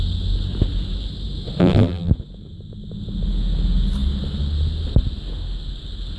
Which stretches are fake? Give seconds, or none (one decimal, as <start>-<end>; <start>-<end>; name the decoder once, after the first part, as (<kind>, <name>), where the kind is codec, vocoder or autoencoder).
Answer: 1.6-2.1 (vocoder, BigVGAN v2)